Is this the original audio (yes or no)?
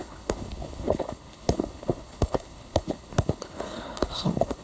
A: no